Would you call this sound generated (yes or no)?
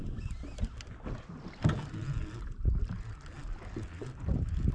no